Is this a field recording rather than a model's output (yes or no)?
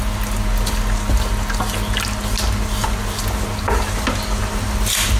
yes